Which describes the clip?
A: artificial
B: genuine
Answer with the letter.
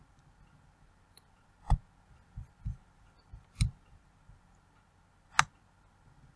B